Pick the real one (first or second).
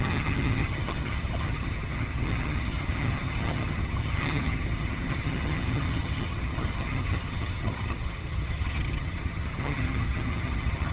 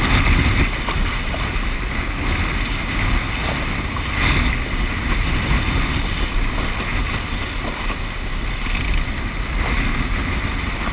second